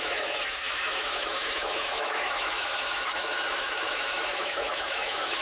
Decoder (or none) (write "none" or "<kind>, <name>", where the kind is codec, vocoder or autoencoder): autoencoder, DAC-VAE